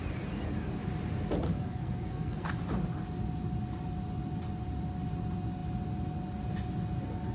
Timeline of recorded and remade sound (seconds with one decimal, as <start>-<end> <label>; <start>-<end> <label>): 0.0-1.5 recorded; 1.5-2.5 remade; 2.5-7.3 recorded